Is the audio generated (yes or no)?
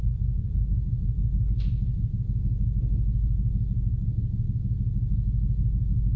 no